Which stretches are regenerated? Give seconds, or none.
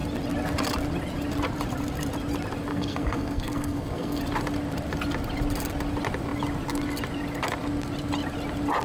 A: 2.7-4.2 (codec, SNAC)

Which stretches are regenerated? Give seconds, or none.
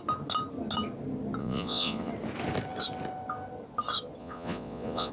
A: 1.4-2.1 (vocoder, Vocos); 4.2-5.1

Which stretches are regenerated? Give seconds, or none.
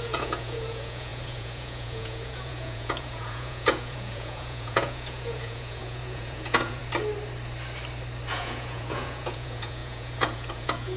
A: 0.0-6.8 (vocoder, Vocos); 8.3-11.0